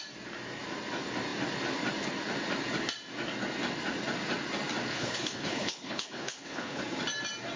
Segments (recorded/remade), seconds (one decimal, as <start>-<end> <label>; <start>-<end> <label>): 0.0-4.9 recorded; 4.9-6.8 remade; 6.8-7.6 recorded